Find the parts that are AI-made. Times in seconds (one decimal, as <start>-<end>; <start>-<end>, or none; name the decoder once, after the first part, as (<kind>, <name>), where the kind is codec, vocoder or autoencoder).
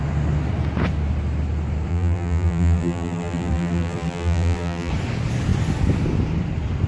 1.9-4.9 (vocoder, BigVGAN v2)